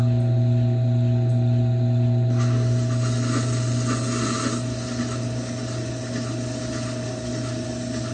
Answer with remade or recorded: recorded